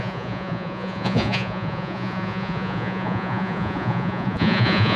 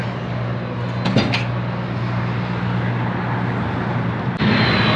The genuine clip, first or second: second